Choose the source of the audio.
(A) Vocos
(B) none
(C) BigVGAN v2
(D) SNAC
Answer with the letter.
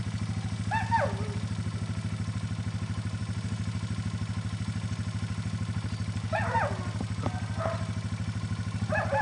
B